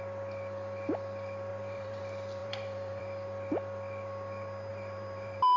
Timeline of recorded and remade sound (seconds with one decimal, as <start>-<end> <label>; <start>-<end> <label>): 0.0-1.5 recorded; 1.5-2.0 remade; 2.0-2.4 recorded; 2.4-3.0 remade; 3.0-4.7 recorded; 4.7-5.6 remade